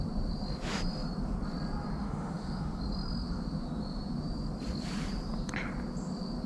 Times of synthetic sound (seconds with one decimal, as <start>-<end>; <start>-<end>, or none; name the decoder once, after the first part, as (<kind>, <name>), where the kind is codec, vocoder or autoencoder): 2.0-2.8 (autoencoder, DAC-VAE)